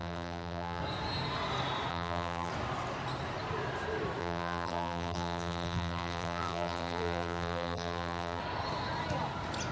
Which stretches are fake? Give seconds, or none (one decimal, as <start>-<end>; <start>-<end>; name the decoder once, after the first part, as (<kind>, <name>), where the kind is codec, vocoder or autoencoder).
0.0-0.8 (vocoder, BigVGAN v2); 1.9-2.5; 4.2-8.4